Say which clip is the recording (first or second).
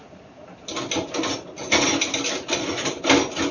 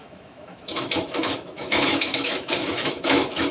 first